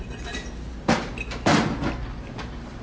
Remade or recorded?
recorded